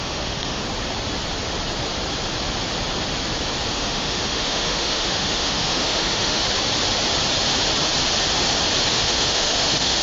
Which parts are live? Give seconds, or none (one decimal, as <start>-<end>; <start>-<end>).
0.6-3.7; 6.4-8.9